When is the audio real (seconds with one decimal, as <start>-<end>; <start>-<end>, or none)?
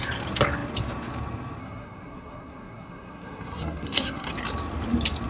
0.0-1.6; 4.3-5.3